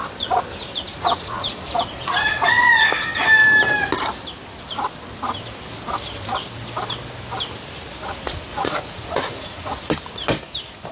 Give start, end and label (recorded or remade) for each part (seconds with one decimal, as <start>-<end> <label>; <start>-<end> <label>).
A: 0.0-0.9 recorded; 0.9-2.7 remade; 2.7-8.5 recorded; 8.5-9.9 remade; 9.9-10.9 recorded